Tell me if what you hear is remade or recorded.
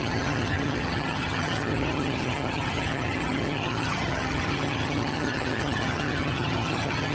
remade